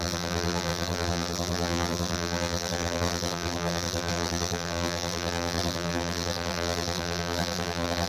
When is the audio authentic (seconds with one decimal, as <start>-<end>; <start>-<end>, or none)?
none